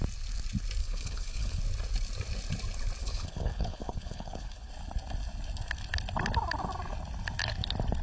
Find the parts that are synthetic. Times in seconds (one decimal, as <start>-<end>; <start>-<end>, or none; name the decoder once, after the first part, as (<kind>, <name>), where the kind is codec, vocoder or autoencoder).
0.8-1.6 (codec, HILCodec); 3.0-4.7